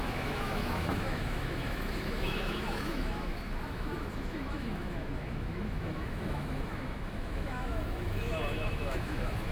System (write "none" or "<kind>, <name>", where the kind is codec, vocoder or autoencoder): autoencoder, DAC-VAE